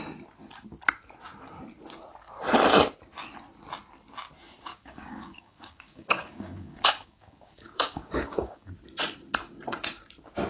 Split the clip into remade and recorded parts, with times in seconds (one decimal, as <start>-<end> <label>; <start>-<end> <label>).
0.0-4.7 recorded; 4.7-8.7 remade; 8.7-10.5 recorded

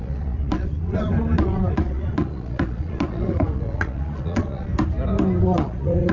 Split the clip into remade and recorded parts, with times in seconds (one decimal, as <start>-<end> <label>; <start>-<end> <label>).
0.0-4.7 remade; 4.7-5.4 recorded; 5.4-6.1 remade

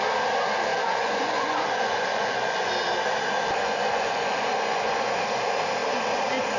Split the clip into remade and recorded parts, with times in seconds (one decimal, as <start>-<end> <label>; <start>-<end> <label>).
0.0-0.7 recorded; 0.7-2.7 remade; 2.7-3.6 recorded; 3.6-5.2 remade; 5.2-6.6 recorded

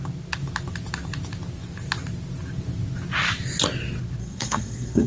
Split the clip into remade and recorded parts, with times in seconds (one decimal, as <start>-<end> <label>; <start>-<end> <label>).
0.0-4.2 recorded; 4.2-5.1 remade

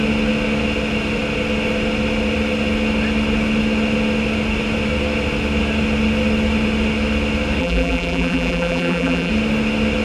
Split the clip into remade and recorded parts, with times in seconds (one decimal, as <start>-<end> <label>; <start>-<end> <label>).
0.0-7.6 recorded; 7.6-9.3 remade; 9.3-10.0 recorded

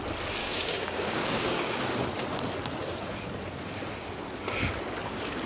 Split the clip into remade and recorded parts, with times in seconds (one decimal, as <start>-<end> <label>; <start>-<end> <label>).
0.0-0.4 recorded; 0.4-1.8 remade; 1.8-5.5 recorded

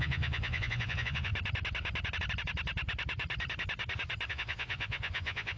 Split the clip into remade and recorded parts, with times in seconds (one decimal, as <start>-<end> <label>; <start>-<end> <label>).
0.0-1.3 remade; 1.3-4.3 recorded; 4.3-5.6 remade

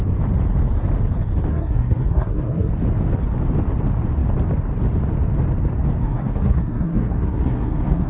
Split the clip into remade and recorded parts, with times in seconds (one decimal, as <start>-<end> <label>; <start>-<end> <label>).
0.0-1.5 recorded; 1.5-2.7 remade; 2.7-6.0 recorded; 6.0-8.1 remade